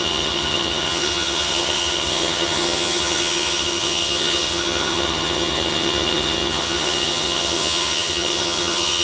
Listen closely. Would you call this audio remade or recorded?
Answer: remade